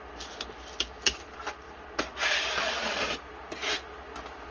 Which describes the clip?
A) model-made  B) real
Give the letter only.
B